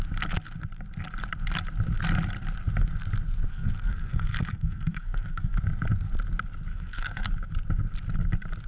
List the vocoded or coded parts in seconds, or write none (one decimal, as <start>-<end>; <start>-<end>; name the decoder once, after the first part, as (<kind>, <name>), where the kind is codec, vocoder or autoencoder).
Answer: 3.5-5.6 (codec, SNAC); 6.7-7.3

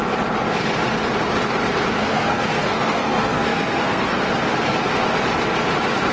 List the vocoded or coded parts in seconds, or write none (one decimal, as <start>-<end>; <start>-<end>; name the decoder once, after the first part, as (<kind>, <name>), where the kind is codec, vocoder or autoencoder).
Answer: 2.0-4.3 (codec, SNAC)

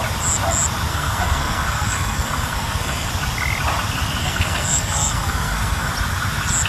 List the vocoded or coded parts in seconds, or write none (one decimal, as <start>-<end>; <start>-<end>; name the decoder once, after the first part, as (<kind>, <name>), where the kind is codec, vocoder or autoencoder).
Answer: 0.9-3.1 (codec, SNAC); 4.2-5.9

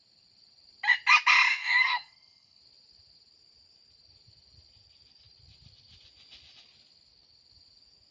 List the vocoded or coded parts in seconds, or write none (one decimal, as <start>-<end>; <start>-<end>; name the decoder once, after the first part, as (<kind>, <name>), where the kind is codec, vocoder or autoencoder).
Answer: 1.6-2.6 (codec, SNAC)

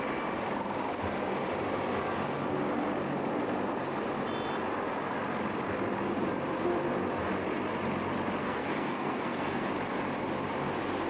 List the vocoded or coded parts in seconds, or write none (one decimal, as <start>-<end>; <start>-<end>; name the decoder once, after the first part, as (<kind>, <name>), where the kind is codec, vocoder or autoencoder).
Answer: 8.4-9.7 (codec, SNAC)

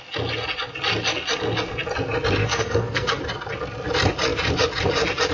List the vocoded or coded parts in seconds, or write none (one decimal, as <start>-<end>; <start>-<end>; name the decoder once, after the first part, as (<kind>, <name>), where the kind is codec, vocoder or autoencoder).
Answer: 2.4-3.2 (codec, SNAC)